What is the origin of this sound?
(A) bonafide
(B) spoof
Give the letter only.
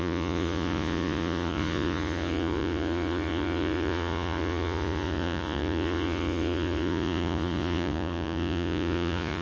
B